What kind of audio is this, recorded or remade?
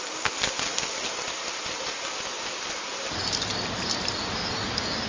recorded